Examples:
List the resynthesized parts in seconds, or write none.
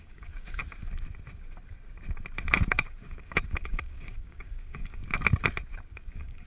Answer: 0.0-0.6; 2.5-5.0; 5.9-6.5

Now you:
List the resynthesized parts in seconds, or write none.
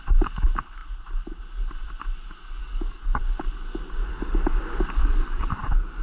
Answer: 2.6-3.2; 4.1-4.6; 5.0-5.6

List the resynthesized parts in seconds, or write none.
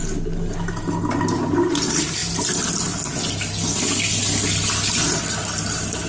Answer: none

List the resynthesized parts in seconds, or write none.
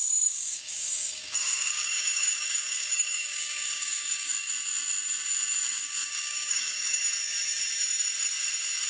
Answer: 0.0-4.5; 5.7-7.0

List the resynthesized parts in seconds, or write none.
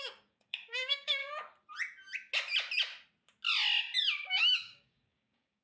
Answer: 0.0-1.2; 4.2-5.6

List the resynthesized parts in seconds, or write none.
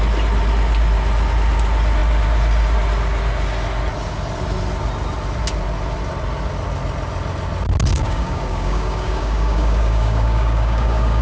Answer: 7.9-11.2